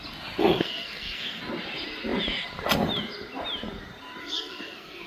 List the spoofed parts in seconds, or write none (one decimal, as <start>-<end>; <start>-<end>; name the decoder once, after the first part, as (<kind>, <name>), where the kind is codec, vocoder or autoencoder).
0.4-1.4 (codec, SNAC); 4.2-5.1